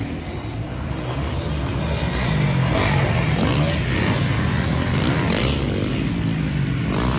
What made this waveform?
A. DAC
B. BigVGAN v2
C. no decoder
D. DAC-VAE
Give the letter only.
C